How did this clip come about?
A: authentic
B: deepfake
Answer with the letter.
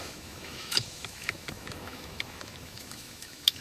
B